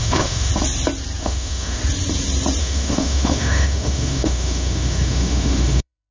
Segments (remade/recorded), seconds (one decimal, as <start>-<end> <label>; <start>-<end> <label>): 0.0-0.5 remade; 0.5-1.2 recorded; 1.2-1.8 remade; 1.8-2.6 recorded; 2.6-6.1 remade